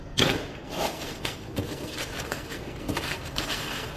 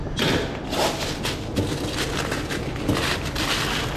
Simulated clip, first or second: first